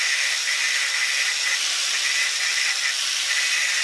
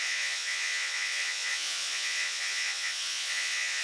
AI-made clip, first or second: second